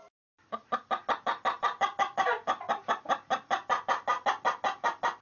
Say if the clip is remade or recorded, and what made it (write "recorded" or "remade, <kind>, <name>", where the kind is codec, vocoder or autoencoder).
recorded